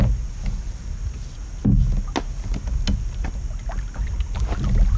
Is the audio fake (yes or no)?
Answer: no